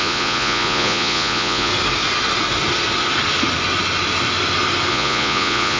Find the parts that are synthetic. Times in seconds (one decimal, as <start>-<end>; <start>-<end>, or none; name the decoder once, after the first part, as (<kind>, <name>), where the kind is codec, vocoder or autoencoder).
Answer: 0.0-1.7 (vocoder, Vocos); 4.9-5.8